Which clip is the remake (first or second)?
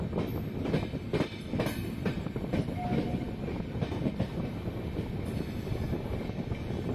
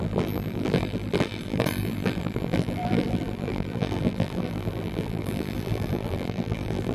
second